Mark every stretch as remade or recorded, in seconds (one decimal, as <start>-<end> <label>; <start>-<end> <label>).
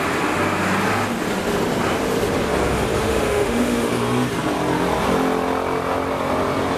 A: 0.0-3.0 recorded; 3.0-3.9 remade; 3.9-6.8 recorded